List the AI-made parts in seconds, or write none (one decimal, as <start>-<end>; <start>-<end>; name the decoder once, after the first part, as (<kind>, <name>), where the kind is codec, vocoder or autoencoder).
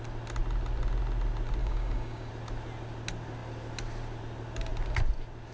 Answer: 1.6-2.3 (codec, DAC)